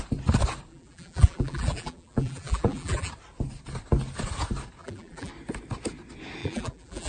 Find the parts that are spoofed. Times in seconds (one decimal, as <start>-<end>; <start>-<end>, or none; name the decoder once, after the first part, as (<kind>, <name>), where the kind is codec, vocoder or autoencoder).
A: 0.7-3.1 (vocoder, BigVGAN v2); 4.8-5.3; 6.4-7.1